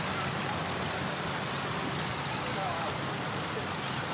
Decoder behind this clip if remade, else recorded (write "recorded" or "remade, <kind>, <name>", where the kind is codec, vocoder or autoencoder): remade, vocoder, BigVGAN v2